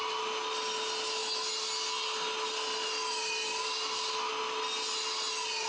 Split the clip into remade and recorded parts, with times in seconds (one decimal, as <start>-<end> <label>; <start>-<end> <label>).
0.0-5.7 recorded